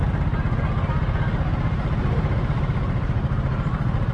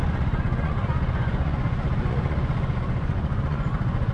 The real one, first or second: first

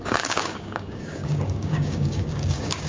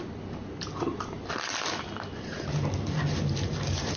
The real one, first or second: second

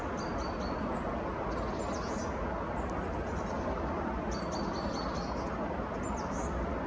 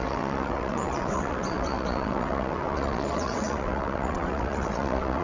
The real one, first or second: first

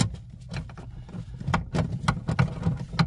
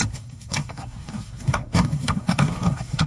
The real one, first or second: first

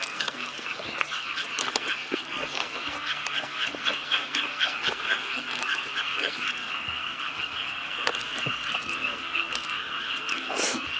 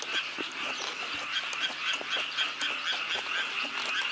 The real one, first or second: second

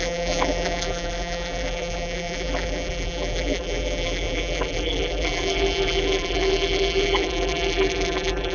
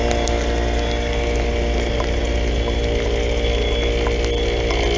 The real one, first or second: second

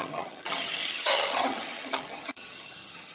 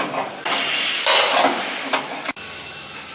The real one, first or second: second